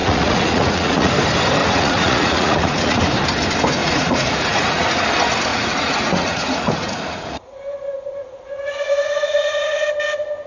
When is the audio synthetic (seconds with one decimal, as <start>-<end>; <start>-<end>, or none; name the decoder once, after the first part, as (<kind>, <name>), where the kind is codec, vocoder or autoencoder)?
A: 0.0-1.1 (vocoder, Vocos); 1.6-3.0; 3.8-5.0; 5.5-9.9